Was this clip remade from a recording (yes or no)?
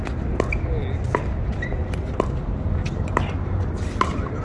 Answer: no